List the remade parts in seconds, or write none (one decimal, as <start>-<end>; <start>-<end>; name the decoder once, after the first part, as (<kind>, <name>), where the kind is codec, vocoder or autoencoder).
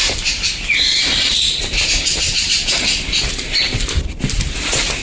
none